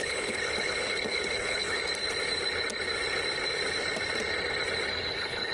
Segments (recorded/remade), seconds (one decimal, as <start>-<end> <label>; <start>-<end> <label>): 0.0-1.8 remade; 1.8-5.1 recorded; 5.1-5.5 remade